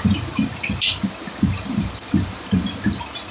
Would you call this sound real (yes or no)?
no